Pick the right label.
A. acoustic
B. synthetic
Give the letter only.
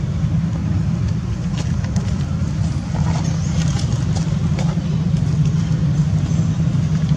A